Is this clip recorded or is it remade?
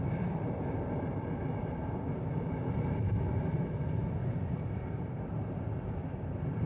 recorded